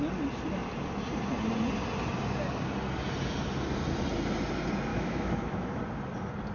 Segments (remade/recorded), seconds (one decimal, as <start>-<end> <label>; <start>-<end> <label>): 0.0-4.9 recorded; 4.9-5.8 remade; 5.8-6.5 recorded